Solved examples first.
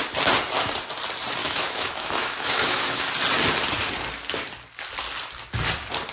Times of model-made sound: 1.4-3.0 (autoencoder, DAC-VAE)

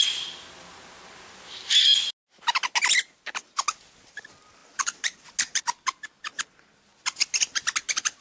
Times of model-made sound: none

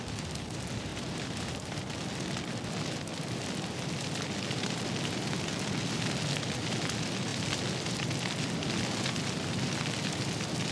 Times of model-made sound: 0.9-1.8 (vocoder, BigVGAN v2)

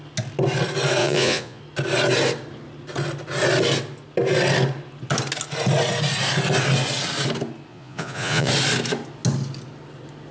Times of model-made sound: 1.0-1.6 (vocoder, Vocos); 7.7-8.5

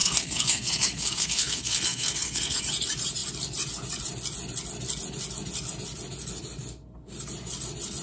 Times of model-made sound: 0.0-2.6 (codec, SNAC)

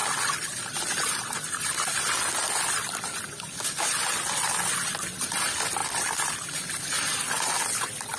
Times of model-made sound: none